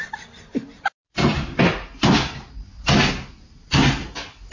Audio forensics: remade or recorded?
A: recorded